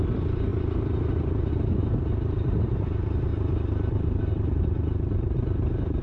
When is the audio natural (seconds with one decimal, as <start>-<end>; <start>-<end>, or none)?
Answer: 0.0-6.0

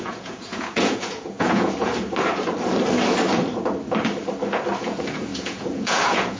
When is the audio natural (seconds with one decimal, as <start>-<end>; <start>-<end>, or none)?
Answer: 1.9-4.8

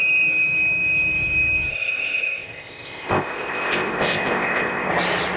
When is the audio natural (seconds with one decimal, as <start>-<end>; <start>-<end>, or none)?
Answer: 0.0-1.7; 4.9-5.4

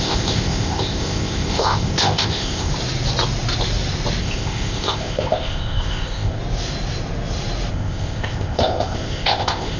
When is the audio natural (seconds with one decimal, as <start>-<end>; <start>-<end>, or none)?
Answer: 2.7-4.2; 6.4-7.7

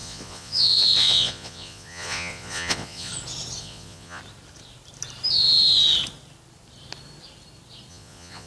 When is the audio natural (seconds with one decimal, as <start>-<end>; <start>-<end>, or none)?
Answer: 3.1-3.6; 4.2-7.9

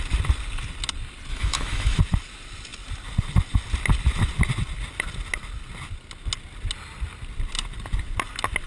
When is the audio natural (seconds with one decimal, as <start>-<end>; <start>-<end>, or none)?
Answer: 0.0-1.3; 2.0-8.7

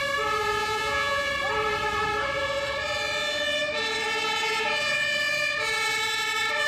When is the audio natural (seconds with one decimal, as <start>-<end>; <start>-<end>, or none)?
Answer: 0.0-0.6; 1.3-6.7

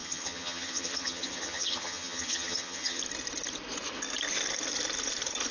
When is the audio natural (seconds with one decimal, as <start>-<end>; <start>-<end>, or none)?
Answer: 3.0-5.5